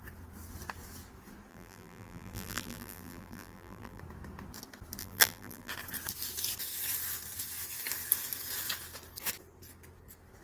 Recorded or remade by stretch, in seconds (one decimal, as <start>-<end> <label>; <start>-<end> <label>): 0.0-1.5 recorded; 1.5-4.0 remade; 4.0-5.0 recorded; 5.0-5.7 remade; 5.7-10.4 recorded